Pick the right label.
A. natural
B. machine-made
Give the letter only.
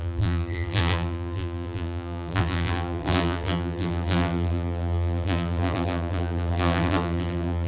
B